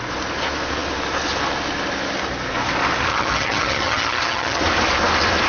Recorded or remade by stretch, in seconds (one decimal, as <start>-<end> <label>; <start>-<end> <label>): 0.0-3.1 recorded; 3.1-4.6 remade; 4.6-5.5 recorded